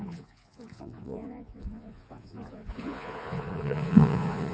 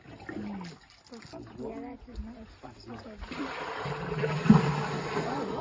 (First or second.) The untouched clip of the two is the second